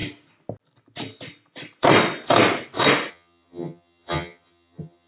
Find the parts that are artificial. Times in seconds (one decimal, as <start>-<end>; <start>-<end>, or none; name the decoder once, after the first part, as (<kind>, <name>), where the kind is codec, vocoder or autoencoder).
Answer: 3.1-5.1 (vocoder, HiFi-GAN)